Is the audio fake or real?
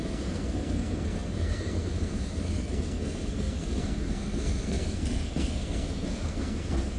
fake